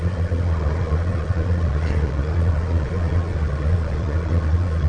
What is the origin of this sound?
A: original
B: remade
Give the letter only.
B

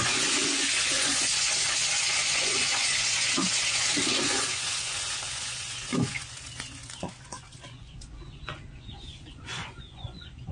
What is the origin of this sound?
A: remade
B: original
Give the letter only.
A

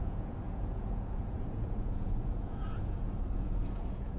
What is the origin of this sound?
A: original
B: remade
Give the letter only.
B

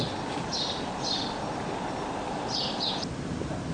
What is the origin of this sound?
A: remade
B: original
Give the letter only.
B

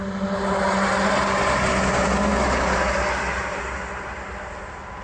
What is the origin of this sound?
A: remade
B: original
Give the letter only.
B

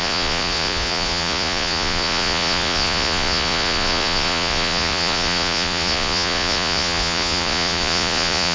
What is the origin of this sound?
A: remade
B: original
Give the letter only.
A